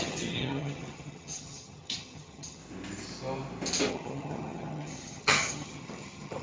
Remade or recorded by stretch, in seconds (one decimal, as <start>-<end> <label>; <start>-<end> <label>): 0.0-2.6 remade; 2.6-3.9 recorded; 3.9-6.4 remade

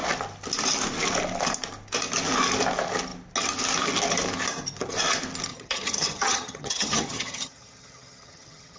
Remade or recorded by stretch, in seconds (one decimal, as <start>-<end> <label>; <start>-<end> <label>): 0.0-5.5 recorded; 5.5-8.8 remade